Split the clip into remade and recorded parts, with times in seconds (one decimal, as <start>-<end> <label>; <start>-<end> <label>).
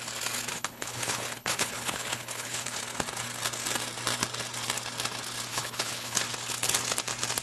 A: 0.0-0.5 recorded; 0.5-2.8 remade; 2.8-5.5 recorded; 5.5-6.2 remade; 6.2-7.4 recorded